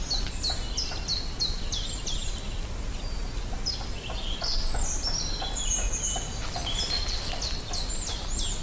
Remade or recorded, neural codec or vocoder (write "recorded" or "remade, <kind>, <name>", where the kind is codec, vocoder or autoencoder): recorded